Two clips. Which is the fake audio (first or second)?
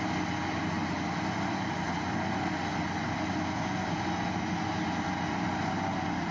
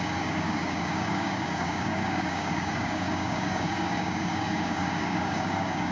second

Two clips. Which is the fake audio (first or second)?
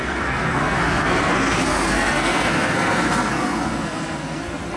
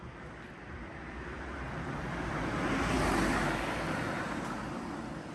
first